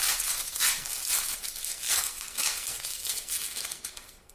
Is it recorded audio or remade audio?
remade